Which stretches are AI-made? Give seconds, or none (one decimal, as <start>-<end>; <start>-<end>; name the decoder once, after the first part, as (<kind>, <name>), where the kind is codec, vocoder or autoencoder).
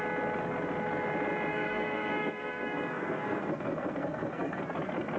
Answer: 1.5-4.6 (codec, SNAC)